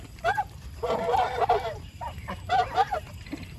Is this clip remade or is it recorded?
remade